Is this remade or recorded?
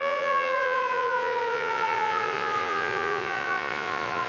remade